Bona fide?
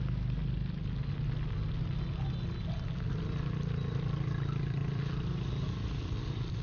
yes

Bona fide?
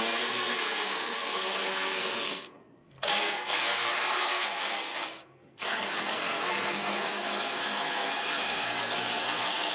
no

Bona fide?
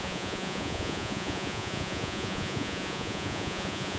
no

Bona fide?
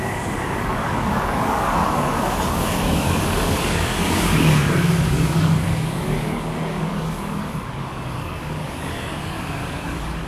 no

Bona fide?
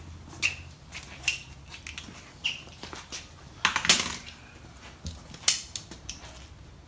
yes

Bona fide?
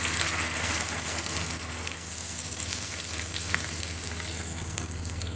no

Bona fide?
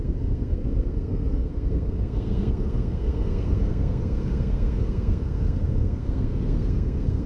no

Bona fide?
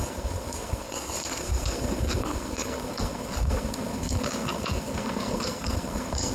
no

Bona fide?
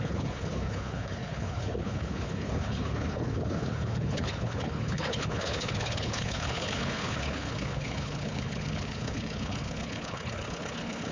no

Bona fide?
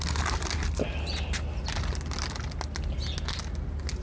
yes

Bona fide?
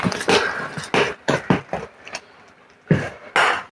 yes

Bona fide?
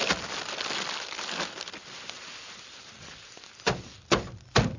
yes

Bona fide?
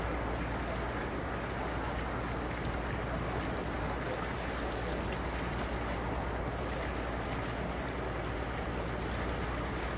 yes